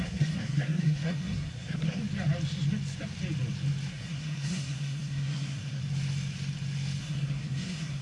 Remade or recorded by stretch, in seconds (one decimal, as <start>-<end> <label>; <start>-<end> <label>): 0.0-2.0 remade; 2.0-3.9 recorded; 3.9-5.8 remade; 5.8-7.0 recorded; 7.0-8.0 remade